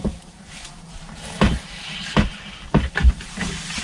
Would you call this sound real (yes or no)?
no